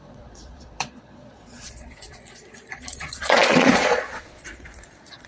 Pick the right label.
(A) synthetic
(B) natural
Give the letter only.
A